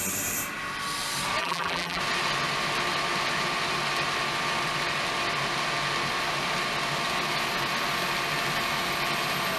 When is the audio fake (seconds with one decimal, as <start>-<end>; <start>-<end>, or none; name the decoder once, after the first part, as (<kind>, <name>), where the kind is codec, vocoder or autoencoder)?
1.4-2.0 (vocoder, BigVGAN v2)